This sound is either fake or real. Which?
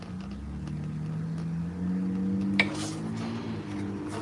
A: real